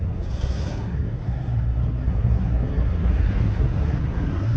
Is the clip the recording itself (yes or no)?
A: no